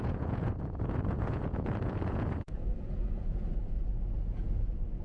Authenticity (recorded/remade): remade